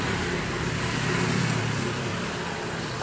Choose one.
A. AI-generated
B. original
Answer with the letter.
B